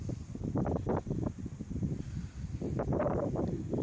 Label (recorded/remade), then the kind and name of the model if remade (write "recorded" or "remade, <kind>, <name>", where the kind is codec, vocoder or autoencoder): recorded